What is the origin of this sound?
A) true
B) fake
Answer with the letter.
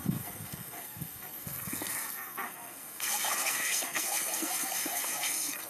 B